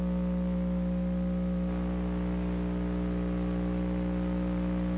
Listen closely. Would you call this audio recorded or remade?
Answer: recorded